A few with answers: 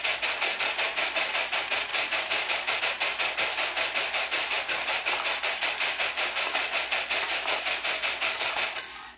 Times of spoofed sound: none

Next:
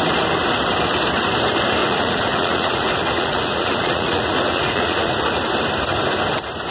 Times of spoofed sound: 1.8-5.1 (vocoder, Vocos)

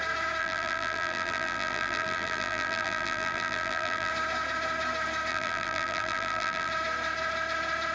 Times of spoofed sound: 0.4-4.1 (vocoder, BigVGAN v2); 5.3-6.7

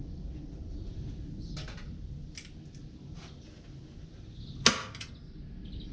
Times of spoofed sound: none

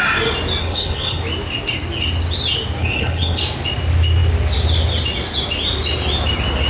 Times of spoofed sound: 0.6-1.2 (codec, HILCodec); 2.8-3.4

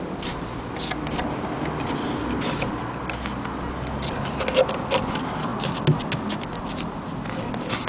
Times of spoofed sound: none